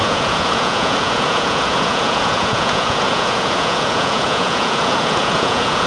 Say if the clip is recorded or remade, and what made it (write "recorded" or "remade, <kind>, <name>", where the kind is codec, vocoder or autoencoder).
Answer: remade, vocoder, Vocos